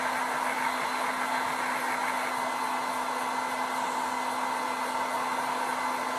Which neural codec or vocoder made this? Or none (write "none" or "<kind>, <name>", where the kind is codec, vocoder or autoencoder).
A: none